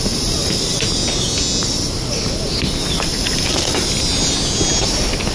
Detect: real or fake real